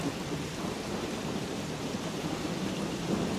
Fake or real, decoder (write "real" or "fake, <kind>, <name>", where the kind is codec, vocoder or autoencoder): fake, vocoder, BigVGAN v2